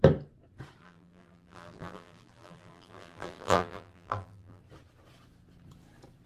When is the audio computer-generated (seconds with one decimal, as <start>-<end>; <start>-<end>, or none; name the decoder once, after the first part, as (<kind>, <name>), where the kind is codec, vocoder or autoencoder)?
0.8-4.6 (vocoder, BigVGAN v2)